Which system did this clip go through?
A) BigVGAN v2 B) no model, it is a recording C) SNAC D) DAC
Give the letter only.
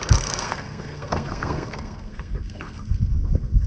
C